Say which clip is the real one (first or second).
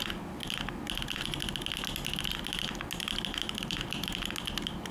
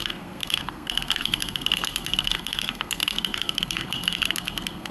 first